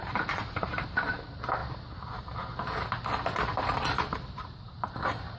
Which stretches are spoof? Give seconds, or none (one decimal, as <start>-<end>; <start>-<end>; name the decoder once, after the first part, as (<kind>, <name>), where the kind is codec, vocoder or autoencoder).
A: 0.0-1.6 (vocoder, BigVGAN v2); 3.6-5.4